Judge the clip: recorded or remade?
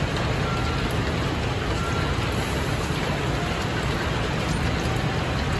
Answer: recorded